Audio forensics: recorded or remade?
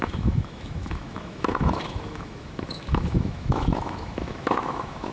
remade